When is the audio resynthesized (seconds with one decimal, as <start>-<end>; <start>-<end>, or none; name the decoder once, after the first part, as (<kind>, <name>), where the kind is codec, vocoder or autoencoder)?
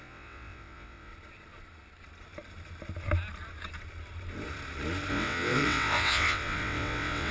0.0-1.1 (vocoder, WaveNeXt); 5.1-7.3